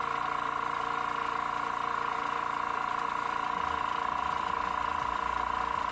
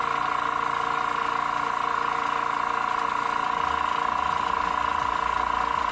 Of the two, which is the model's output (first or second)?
first